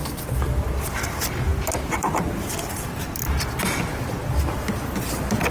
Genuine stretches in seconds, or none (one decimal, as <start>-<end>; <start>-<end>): 0.0-5.5